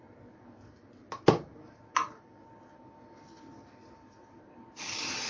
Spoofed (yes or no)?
no